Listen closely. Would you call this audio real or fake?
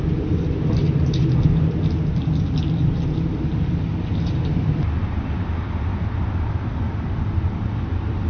real